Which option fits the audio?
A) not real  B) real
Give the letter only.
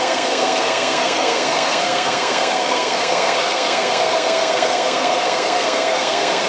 A